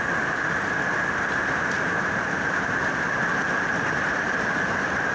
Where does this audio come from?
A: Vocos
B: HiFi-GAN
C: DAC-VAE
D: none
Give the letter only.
D